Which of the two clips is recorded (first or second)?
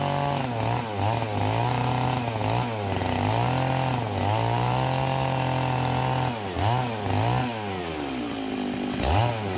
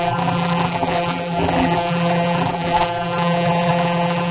first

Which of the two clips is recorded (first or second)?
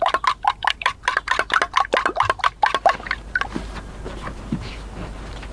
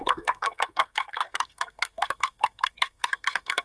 first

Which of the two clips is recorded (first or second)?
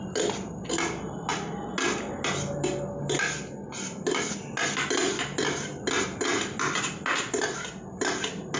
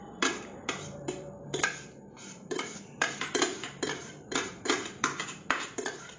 first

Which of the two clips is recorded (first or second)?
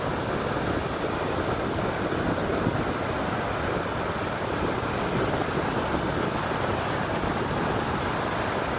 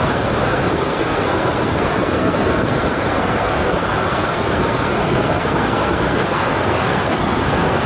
first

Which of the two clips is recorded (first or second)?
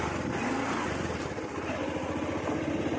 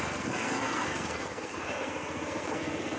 first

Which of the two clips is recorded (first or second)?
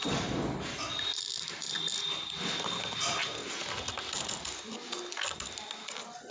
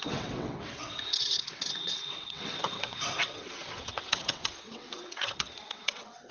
first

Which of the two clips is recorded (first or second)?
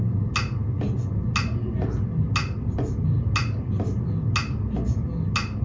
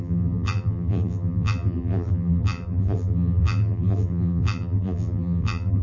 first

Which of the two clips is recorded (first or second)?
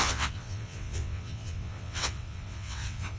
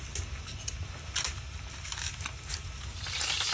second